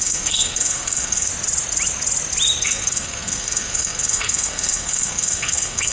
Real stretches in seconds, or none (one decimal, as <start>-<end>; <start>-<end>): 1.3-2.6